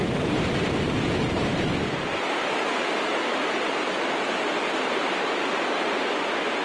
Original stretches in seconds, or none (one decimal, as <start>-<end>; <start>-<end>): 0.0-3.1; 5.0-6.6